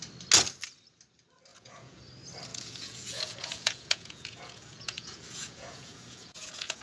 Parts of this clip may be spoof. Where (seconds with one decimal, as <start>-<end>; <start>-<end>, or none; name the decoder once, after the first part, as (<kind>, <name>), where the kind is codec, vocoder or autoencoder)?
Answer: 1.5-2.0 (vocoder, Vocos); 2.5-6.8